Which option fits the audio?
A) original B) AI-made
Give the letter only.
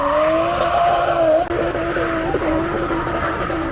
A